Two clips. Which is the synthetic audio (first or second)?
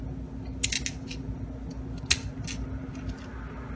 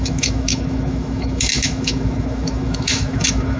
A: second